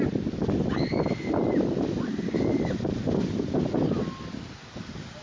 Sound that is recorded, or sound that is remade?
recorded